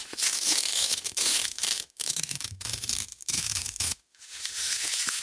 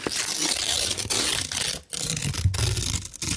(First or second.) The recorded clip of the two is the second